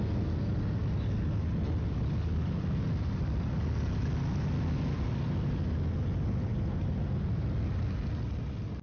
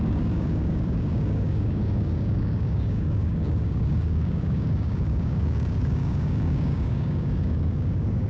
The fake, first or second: second